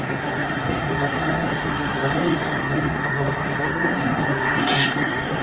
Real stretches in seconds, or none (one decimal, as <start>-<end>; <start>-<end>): none